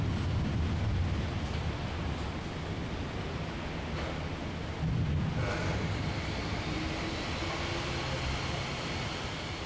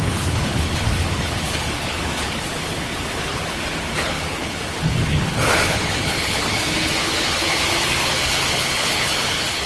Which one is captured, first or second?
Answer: first